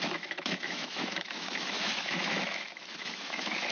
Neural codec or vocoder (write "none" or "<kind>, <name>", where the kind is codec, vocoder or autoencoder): autoencoder, DAC-VAE